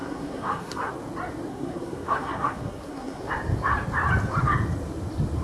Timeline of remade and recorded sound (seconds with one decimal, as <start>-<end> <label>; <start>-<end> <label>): 0.0-0.9 remade; 0.9-1.5 recorded; 1.5-3.2 remade; 3.2-5.4 recorded